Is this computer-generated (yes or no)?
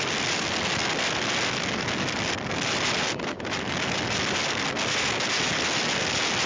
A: no